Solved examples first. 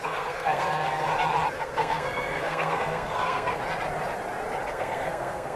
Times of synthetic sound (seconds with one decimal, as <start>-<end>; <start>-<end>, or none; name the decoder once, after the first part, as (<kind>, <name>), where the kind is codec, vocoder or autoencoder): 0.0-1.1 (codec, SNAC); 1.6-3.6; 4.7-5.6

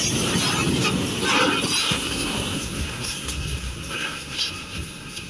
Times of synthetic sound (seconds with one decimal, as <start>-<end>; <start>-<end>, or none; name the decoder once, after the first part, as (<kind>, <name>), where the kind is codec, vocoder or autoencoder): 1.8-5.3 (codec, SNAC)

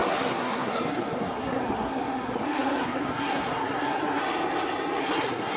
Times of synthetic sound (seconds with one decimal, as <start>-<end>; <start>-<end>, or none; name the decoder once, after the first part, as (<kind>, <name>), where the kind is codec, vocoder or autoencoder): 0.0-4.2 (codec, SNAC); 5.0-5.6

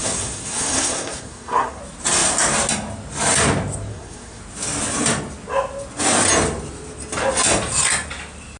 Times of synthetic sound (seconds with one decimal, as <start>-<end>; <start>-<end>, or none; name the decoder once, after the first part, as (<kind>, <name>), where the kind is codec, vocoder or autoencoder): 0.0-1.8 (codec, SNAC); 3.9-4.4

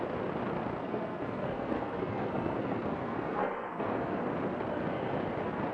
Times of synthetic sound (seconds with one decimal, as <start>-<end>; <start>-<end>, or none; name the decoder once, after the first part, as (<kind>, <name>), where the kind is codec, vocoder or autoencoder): 0.8-4.2 (codec, SNAC)

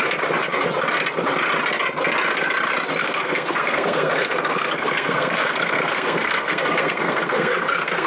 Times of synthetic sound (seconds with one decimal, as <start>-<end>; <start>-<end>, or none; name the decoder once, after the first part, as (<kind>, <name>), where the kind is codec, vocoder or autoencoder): 3.0-8.1 (codec, SNAC)